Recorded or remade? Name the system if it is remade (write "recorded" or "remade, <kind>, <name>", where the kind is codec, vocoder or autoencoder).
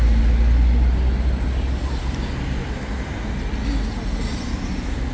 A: recorded